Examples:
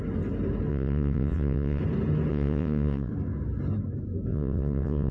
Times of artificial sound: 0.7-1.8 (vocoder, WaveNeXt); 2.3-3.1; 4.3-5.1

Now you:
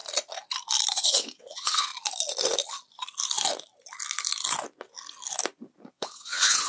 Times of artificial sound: 0.9-1.9 (vocoder, WaveNeXt); 5.9-6.7